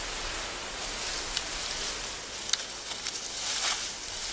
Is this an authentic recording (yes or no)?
yes